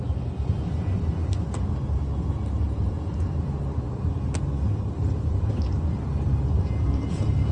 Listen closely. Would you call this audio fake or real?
real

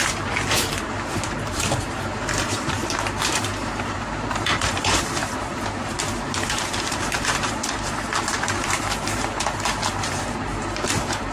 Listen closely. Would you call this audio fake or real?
fake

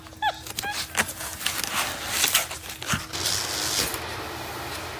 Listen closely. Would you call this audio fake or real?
real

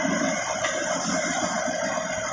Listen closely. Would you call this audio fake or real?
real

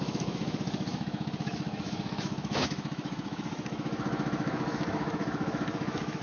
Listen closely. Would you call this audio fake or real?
fake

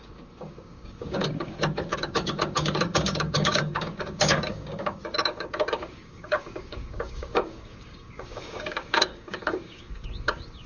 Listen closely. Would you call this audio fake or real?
fake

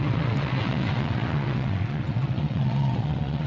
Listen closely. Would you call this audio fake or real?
fake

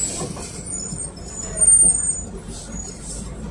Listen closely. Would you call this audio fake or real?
real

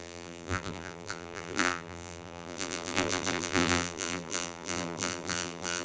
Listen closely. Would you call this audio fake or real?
fake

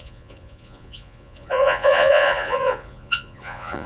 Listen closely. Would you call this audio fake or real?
fake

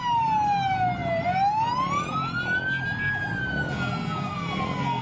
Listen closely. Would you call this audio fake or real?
real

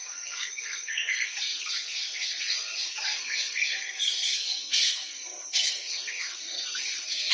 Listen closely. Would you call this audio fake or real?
fake